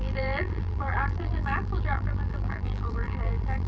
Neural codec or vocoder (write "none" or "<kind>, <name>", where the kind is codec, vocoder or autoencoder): vocoder, BigVGAN v2